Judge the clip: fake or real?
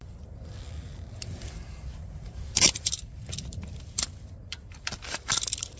fake